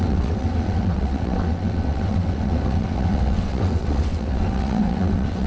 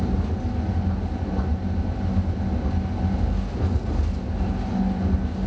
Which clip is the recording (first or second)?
second